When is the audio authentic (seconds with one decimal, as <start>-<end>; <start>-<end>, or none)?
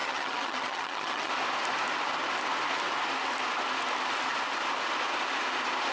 1.3-5.9